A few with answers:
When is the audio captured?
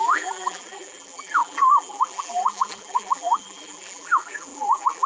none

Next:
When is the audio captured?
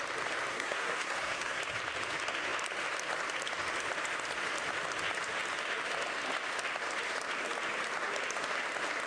0.0-0.5; 1.6-9.1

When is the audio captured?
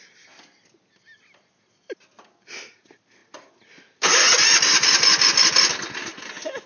0.0-6.7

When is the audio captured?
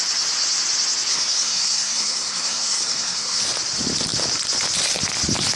0.0-1.1; 3.4-5.6